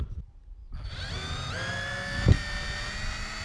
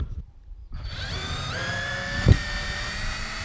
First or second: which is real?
first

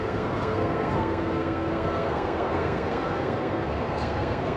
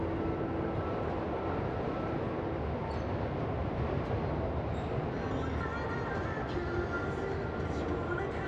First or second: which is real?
second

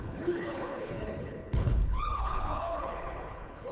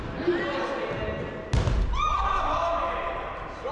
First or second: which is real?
second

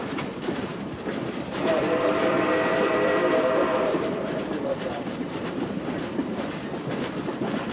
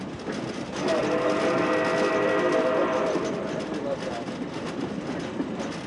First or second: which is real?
second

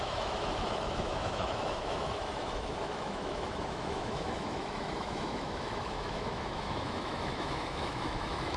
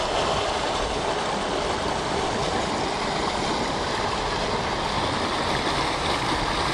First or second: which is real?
second